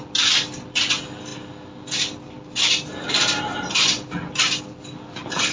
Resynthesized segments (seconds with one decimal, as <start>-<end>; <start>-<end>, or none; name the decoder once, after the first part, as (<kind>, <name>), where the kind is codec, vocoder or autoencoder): none